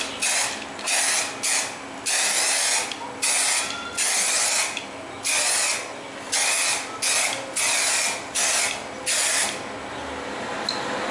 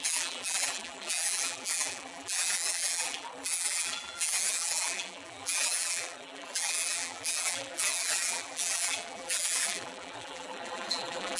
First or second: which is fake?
second